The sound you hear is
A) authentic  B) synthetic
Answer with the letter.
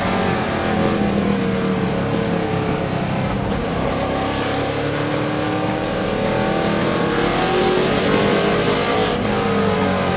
A